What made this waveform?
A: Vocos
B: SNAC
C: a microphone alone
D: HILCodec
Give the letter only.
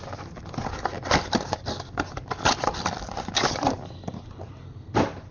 C